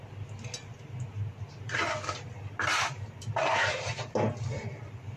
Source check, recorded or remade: recorded